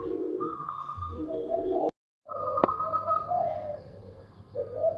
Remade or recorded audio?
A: remade